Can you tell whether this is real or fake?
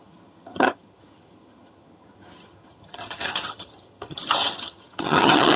fake